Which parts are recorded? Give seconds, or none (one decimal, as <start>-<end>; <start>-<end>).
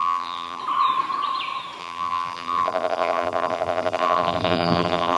0.6-1.8